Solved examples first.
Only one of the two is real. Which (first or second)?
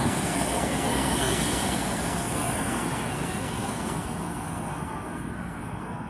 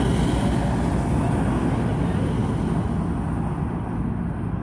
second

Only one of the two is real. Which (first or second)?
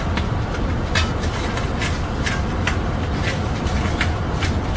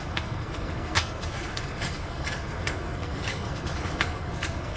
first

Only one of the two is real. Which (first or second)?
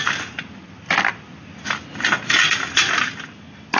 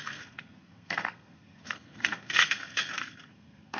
first